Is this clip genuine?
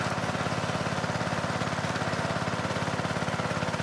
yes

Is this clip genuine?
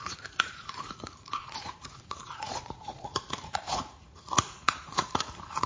no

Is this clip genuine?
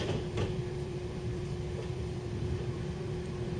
no